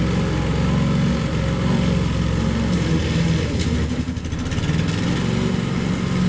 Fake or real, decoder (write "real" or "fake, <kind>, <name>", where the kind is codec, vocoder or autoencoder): real